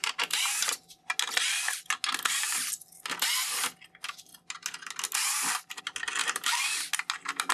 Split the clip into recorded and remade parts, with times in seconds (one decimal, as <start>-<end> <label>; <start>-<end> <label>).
0.0-0.9 remade; 0.9-6.2 recorded; 6.2-6.7 remade; 6.7-7.5 recorded